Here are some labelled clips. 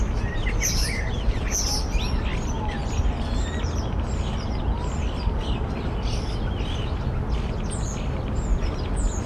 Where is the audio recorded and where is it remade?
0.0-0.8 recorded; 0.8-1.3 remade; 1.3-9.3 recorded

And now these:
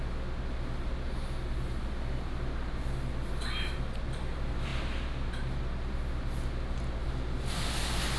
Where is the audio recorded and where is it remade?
0.0-8.2 recorded

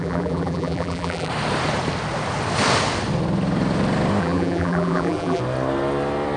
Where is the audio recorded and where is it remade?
0.0-1.3 remade; 1.3-4.2 recorded; 4.2-5.4 remade; 5.4-6.4 recorded

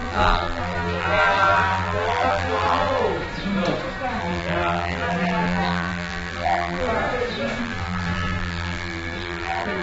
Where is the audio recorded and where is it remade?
0.0-3.0 remade; 3.0-4.2 recorded; 4.2-6.9 remade; 6.9-7.6 recorded; 7.6-9.8 remade

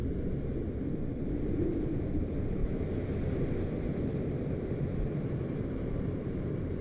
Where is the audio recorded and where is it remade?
0.0-1.5 recorded; 1.5-6.8 remade

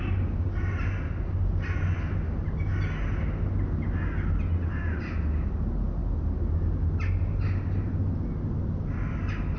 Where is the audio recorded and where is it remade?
0.0-9.6 recorded

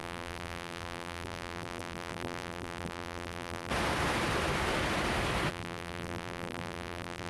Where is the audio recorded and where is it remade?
0.0-3.7 remade; 3.7-5.5 recorded; 5.5-7.3 remade